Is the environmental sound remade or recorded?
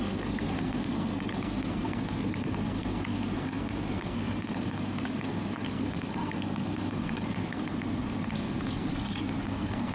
remade